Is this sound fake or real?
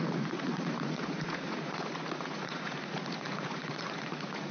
fake